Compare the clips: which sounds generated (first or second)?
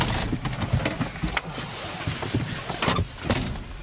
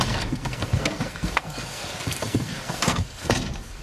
second